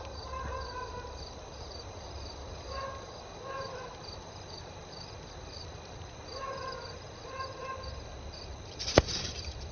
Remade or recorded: recorded